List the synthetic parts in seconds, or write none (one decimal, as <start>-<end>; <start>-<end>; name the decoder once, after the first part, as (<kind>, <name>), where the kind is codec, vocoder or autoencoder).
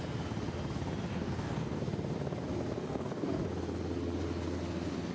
1.1-1.8 (codec, DAC); 2.8-3.4